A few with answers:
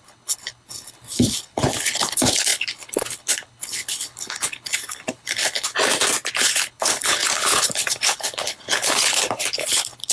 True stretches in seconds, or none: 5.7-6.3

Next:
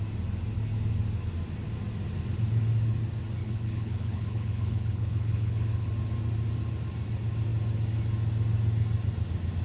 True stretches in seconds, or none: 0.0-3.4; 5.9-9.6

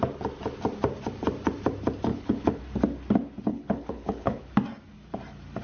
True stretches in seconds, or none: 0.0-2.1; 2.6-3.5; 4.5-5.6

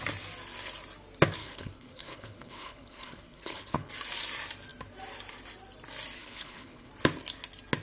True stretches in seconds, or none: 0.0-1.4; 3.9-6.2; 6.9-7.8

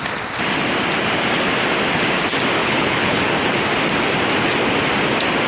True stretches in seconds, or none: 0.0-2.6; 3.2-5.5